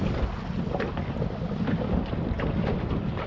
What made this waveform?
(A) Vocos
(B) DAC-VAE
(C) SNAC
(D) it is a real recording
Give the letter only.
D